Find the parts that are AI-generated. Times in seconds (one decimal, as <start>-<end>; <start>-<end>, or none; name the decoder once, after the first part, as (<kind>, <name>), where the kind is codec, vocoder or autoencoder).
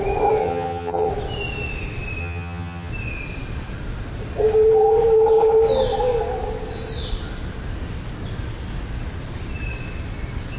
0.4-1.1 (vocoder, HiFi-GAN); 2.2-2.9